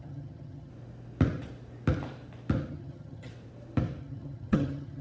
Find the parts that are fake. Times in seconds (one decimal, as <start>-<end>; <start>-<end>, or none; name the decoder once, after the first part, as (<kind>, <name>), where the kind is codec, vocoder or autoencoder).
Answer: 0.0-0.7 (vocoder, HiFi-GAN); 2.7-3.3; 4.0-5.0